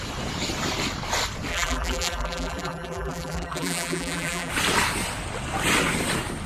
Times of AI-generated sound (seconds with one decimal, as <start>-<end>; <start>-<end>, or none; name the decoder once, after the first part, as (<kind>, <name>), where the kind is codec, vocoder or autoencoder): 1.5-4.5 (vocoder, BigVGAN v2)